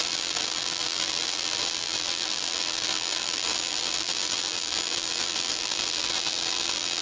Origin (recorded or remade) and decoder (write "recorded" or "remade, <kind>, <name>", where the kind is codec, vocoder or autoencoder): remade, vocoder, BigVGAN v2